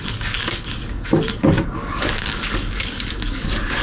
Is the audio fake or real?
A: fake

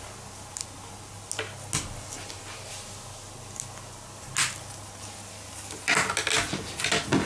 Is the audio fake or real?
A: real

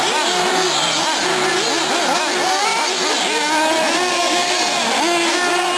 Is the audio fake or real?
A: real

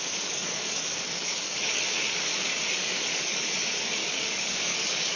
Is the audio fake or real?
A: fake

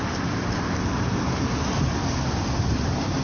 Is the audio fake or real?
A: real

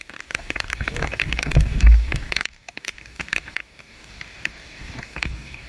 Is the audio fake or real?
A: fake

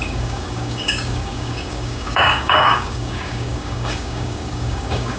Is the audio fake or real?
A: fake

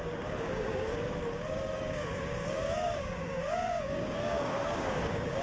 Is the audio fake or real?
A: fake